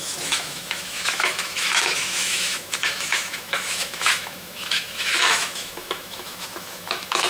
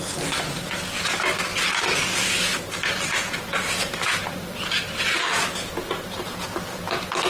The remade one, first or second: first